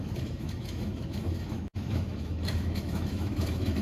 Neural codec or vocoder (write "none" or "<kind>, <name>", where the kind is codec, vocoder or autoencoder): autoencoder, DAC-VAE